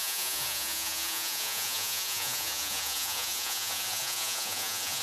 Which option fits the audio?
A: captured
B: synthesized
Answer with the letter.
B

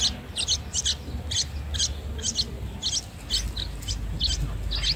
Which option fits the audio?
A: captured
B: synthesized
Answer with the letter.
A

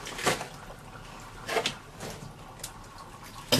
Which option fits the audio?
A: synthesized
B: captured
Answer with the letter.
B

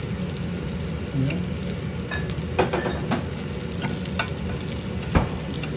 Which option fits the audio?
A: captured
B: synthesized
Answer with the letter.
A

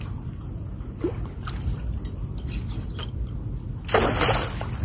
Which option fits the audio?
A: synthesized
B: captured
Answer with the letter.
B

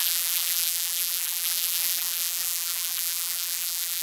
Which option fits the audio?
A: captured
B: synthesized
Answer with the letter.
B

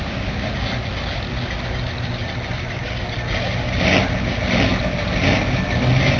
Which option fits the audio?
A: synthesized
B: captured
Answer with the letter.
B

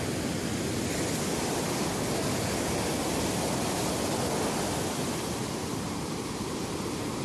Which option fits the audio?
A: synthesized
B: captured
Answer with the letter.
B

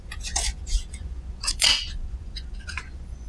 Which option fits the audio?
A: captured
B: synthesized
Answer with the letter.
B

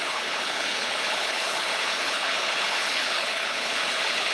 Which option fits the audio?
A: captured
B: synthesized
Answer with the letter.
B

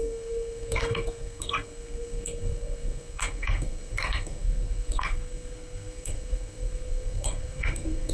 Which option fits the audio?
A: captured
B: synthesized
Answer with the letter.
B